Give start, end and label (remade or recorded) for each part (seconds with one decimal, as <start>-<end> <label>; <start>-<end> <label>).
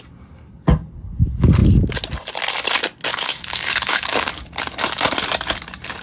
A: 0.0-3.1 recorded; 3.1-4.3 remade; 4.3-6.0 recorded